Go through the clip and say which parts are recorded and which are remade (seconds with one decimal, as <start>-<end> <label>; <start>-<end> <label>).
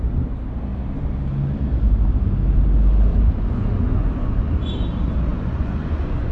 0.0-3.1 recorded; 3.1-4.7 remade; 4.7-5.3 recorded; 5.3-6.3 remade